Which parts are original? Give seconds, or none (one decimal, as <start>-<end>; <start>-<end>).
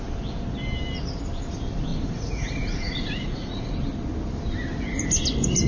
0.0-1.9; 3.7-5.7